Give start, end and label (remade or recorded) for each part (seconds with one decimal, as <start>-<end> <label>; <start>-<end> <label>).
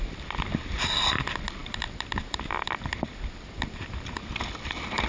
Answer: 0.0-1.6 recorded; 1.6-4.2 remade; 4.2-5.1 recorded